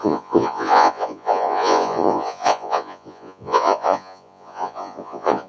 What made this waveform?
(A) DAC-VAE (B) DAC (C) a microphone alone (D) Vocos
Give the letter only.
D